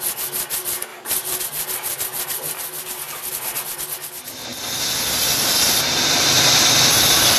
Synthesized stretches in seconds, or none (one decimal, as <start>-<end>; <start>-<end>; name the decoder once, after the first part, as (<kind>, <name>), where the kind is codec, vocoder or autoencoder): 0.9-1.4 (vocoder, BigVGAN v2)